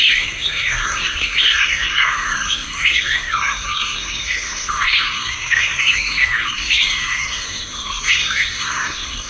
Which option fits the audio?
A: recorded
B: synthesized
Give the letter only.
B